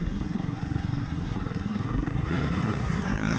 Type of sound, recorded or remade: remade